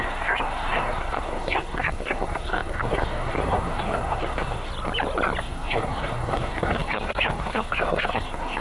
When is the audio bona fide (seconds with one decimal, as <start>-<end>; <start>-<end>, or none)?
4.7-5.4